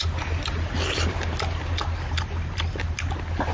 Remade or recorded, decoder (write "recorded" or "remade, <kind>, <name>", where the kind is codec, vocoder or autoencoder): recorded